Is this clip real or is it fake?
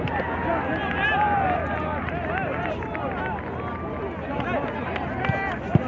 real